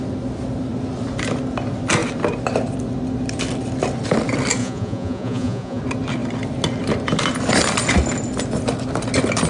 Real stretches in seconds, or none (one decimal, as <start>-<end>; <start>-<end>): 0.0-4.6; 5.8-9.5